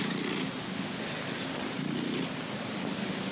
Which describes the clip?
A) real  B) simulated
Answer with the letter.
A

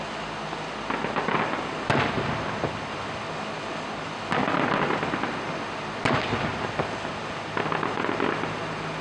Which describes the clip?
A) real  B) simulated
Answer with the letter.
A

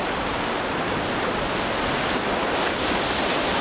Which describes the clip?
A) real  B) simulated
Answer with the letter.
A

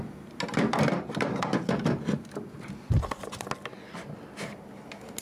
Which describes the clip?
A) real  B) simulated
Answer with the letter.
A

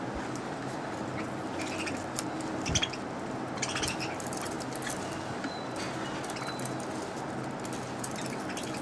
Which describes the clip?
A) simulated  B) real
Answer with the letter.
B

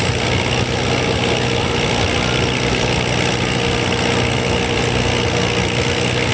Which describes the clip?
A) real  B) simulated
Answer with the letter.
A